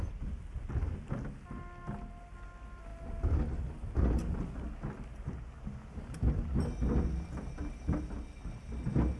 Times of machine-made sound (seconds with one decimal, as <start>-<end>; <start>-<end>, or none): none